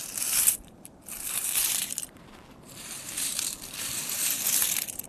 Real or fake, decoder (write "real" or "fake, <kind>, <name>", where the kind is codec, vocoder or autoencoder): fake, vocoder, BigVGAN v2